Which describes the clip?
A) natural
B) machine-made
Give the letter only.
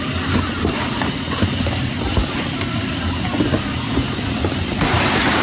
B